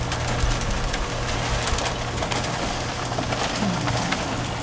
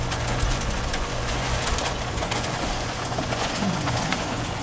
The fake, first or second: second